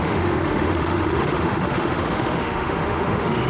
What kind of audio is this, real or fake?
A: fake